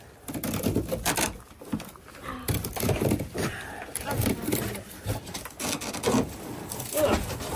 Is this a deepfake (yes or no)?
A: no